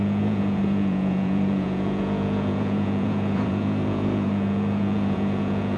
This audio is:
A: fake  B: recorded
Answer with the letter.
A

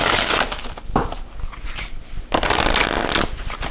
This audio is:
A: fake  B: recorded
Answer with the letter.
B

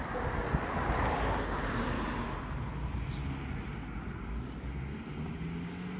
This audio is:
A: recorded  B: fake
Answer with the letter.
A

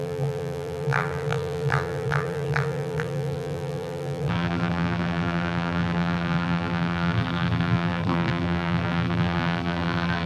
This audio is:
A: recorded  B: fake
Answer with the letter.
B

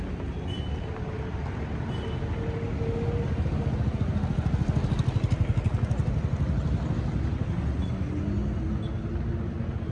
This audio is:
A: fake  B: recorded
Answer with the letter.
B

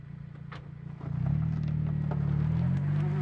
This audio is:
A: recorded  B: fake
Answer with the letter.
A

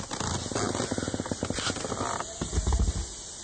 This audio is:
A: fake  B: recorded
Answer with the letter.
B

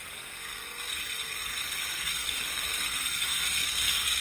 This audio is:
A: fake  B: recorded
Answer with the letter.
A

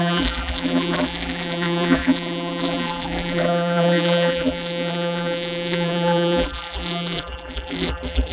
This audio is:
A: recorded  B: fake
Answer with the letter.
B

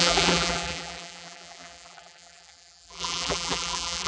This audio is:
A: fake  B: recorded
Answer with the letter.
A